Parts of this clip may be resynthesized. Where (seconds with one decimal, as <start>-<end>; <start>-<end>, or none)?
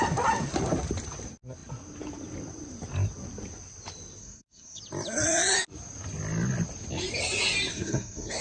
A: 4.2-4.8; 7.7-8.4